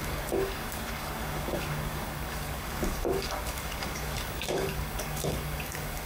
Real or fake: fake